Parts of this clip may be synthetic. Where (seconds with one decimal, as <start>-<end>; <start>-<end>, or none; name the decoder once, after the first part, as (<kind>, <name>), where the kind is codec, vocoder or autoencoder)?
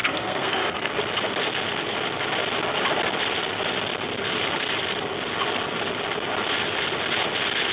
0.0-0.9 (codec, SNAC)